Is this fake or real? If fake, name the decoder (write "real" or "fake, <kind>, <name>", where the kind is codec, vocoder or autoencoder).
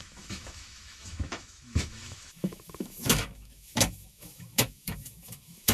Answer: fake, autoencoder, DAC-VAE